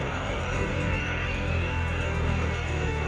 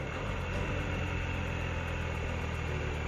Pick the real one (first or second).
second